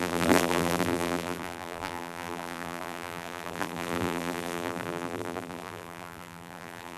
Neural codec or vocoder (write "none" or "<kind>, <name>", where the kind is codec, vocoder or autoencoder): vocoder, BigVGAN v2